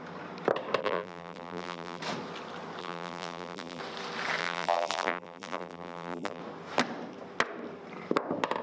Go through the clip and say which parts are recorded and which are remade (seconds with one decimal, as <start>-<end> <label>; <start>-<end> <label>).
0.0-0.8 recorded; 0.8-2.0 remade; 2.0-2.8 recorded; 2.8-3.8 remade; 3.8-4.4 recorded; 4.4-6.4 remade; 6.4-8.6 recorded